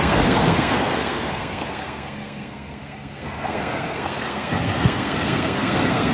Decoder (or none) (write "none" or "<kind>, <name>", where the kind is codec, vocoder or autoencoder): codec, SNAC